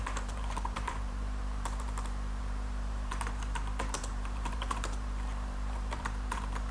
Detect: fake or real fake